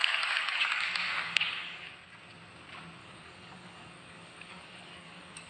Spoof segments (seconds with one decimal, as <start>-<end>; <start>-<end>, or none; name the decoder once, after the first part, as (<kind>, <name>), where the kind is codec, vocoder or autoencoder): 0.0-1.9 (codec, DAC); 3.0-5.5